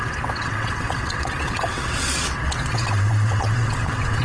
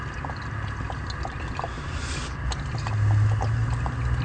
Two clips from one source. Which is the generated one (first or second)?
first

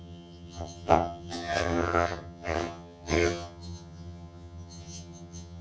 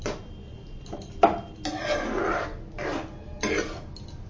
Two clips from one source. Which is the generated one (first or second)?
first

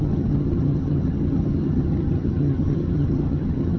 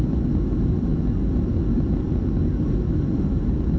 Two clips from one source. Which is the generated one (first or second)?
first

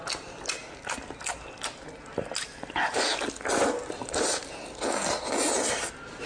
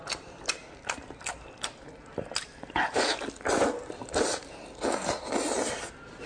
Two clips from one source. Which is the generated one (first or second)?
second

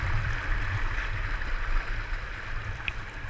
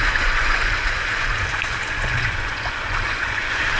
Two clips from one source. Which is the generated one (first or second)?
second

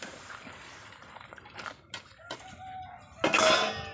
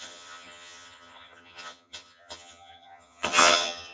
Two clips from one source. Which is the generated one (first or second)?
second